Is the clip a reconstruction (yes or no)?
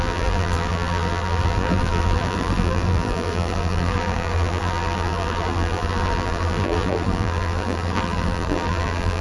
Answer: yes